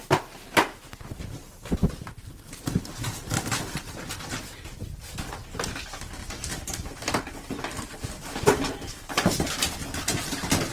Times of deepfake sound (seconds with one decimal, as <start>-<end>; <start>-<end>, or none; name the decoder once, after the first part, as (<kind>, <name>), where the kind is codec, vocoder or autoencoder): 2.2-4.1 (vocoder, BigVGAN v2); 6.2-8.7